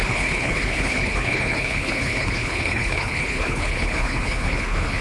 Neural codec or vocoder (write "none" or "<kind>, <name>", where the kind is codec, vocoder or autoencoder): codec, HILCodec